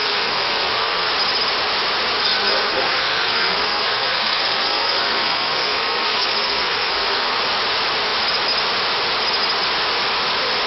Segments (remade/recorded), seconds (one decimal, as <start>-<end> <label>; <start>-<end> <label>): 0.0-1.1 remade; 1.1-2.5 recorded; 2.5-7.4 remade; 7.4-10.7 recorded